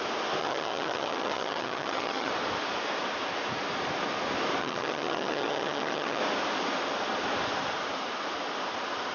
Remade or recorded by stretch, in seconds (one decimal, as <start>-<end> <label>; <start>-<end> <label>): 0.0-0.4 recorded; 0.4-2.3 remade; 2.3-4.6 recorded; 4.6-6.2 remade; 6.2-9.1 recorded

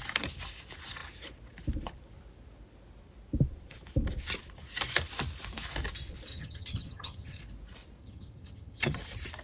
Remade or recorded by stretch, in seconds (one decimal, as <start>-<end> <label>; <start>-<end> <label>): 0.0-6.3 recorded; 6.3-7.4 remade; 7.4-8.0 recorded; 8.0-9.0 remade; 9.0-9.4 recorded

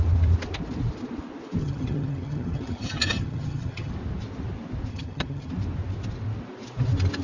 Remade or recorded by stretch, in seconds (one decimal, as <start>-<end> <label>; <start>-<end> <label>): 0.0-1.6 recorded; 1.6-3.9 remade; 3.9-4.9 recorded; 4.9-5.5 remade; 5.5-7.2 recorded

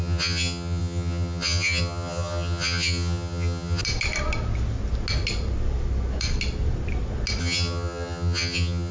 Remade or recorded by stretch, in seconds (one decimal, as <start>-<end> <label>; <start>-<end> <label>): 0.0-3.8 remade; 3.8-7.4 recorded; 7.4-8.9 remade

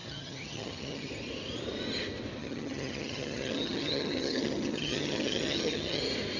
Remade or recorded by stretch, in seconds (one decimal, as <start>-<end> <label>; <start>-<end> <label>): 0.0-1.1 remade; 1.1-2.4 recorded; 2.4-6.0 remade; 6.0-6.4 recorded